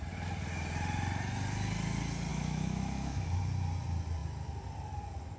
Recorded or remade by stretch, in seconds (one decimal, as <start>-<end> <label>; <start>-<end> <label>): 0.0-2.3 recorded; 2.3-3.4 remade; 3.4-5.4 recorded